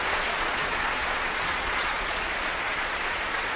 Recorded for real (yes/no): no